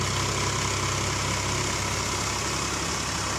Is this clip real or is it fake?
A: real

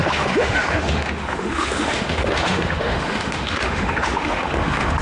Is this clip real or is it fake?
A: fake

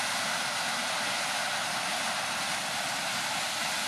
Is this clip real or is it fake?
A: real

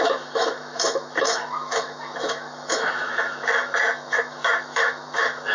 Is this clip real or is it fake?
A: fake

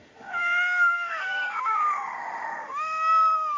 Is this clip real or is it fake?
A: fake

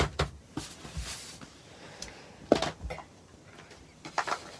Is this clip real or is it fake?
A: real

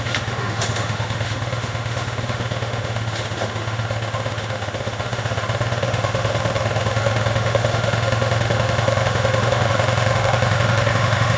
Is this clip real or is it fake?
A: fake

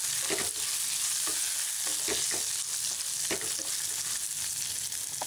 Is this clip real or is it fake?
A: real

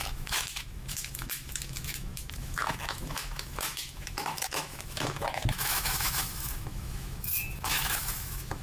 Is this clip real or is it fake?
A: fake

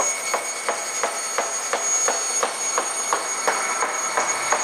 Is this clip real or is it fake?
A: real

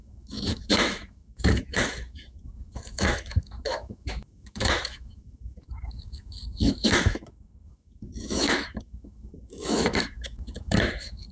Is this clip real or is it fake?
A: fake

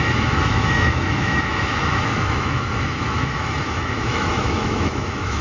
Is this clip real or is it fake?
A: fake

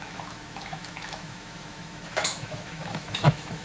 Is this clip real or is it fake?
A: fake